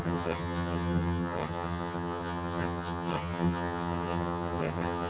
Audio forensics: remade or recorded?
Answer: remade